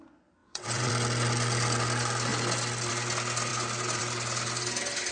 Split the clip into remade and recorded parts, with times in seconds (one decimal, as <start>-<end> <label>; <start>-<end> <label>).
0.0-0.4 recorded; 0.4-0.9 remade; 0.9-5.1 recorded